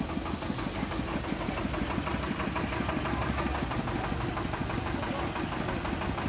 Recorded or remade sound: recorded